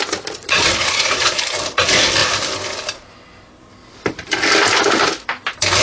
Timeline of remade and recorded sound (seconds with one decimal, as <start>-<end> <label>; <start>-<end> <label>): 0.0-0.4 recorded; 0.4-1.4 remade; 1.4-5.8 recorded